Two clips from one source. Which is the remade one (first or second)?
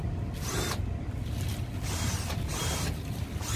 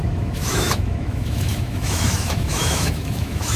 second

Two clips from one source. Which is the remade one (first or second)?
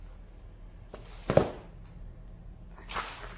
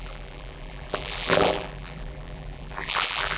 second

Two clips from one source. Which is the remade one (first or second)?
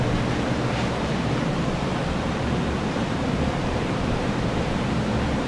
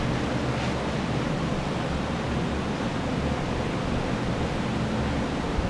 first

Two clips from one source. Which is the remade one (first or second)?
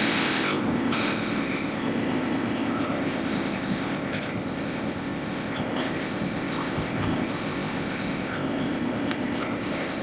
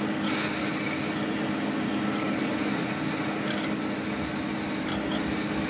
first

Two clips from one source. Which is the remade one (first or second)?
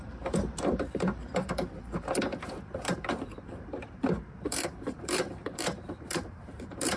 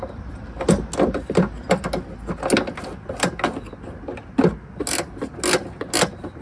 first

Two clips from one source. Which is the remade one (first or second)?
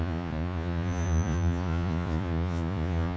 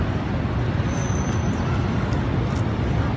first